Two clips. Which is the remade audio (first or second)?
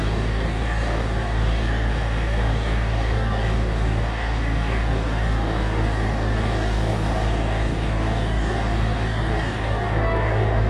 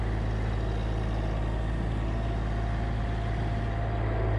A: first